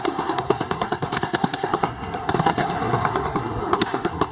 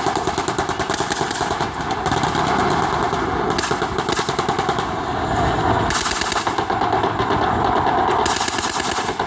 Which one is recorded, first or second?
second